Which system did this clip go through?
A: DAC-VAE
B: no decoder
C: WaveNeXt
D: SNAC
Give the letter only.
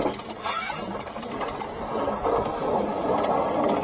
B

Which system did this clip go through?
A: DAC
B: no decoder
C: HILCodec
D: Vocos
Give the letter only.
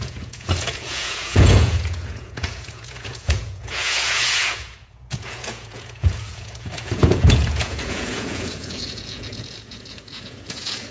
D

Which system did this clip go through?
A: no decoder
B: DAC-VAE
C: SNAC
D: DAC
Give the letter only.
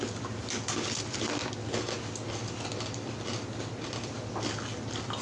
A